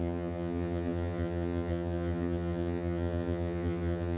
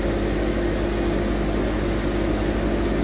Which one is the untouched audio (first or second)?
second